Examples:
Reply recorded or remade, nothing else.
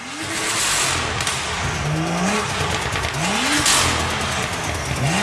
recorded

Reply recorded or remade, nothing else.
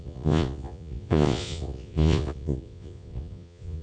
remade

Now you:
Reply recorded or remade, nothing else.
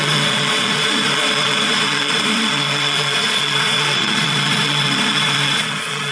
remade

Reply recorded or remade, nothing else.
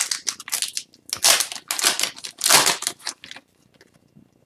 recorded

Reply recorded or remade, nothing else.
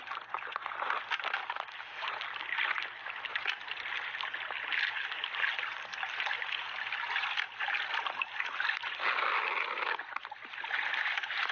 recorded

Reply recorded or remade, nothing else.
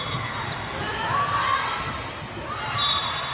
recorded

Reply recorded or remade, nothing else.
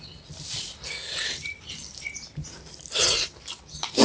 recorded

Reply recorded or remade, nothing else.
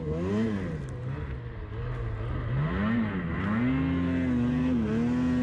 recorded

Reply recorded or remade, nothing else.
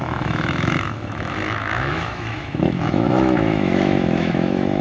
remade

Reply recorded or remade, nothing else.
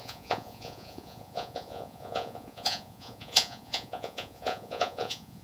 remade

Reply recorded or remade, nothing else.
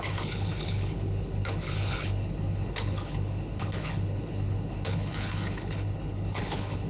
remade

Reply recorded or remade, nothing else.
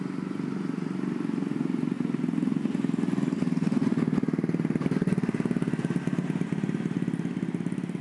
recorded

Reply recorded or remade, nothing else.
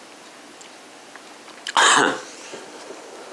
recorded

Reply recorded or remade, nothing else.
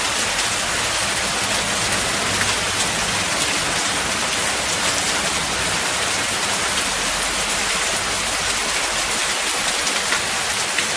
recorded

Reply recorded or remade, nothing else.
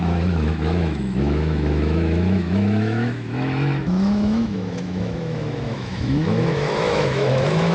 remade